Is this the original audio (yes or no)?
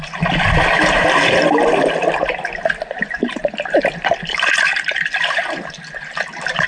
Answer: yes